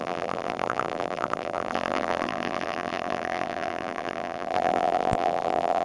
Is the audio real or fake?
fake